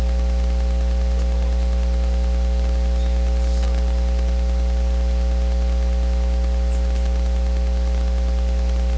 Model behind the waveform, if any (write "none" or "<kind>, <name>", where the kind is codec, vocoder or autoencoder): none